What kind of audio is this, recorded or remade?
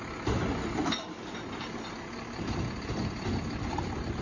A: recorded